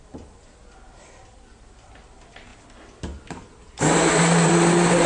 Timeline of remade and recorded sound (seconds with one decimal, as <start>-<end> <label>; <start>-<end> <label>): 0.0-5.1 recorded